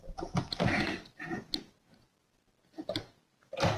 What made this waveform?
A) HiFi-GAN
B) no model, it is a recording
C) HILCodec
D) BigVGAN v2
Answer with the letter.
B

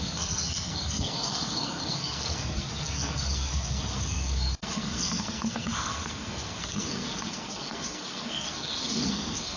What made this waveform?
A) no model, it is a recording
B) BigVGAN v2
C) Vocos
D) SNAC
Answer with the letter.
D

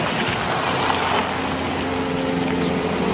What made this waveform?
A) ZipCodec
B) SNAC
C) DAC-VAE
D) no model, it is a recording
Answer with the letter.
D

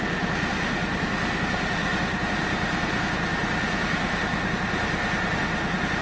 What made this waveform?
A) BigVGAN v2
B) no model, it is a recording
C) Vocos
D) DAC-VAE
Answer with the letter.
B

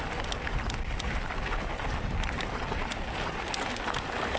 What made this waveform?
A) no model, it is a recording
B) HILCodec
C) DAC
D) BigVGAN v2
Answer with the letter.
A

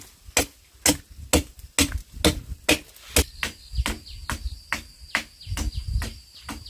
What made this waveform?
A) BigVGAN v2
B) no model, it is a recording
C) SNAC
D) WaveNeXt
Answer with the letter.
B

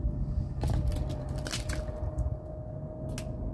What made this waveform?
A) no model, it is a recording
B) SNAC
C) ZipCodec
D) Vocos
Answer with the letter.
A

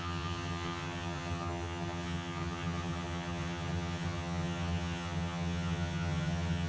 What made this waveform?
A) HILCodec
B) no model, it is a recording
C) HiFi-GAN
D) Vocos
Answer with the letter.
C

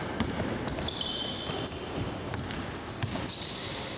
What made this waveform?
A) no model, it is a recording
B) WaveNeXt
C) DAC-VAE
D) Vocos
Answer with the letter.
A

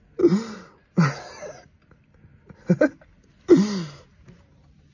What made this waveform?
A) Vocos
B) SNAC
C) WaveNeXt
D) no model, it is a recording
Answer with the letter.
D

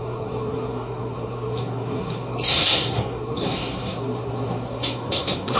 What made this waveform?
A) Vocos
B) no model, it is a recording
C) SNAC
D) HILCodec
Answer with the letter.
C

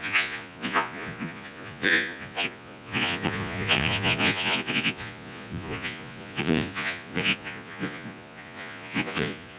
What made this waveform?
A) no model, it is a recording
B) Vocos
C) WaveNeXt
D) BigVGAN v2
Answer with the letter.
B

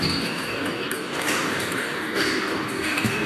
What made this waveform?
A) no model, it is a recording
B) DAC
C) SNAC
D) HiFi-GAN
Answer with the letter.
B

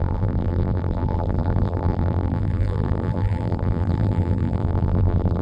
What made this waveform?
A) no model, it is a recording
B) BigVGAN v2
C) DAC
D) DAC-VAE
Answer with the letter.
B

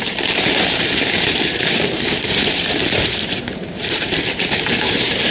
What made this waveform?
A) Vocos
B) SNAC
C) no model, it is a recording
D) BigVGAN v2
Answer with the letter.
D